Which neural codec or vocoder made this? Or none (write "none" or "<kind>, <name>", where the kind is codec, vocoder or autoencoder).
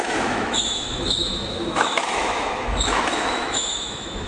autoencoder, DAC-VAE